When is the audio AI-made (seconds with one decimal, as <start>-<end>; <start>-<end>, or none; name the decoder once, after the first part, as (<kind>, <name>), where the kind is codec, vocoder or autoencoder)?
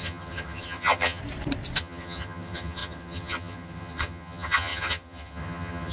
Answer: 0.0-1.2 (vocoder, HiFi-GAN); 1.8-5.9